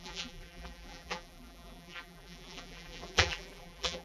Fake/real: fake